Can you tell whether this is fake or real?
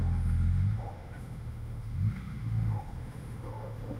fake